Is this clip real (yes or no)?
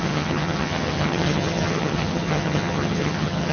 no